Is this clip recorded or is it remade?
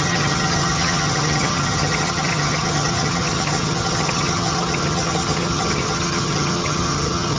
remade